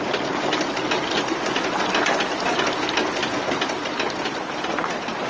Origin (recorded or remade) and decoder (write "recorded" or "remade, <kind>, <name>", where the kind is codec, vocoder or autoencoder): recorded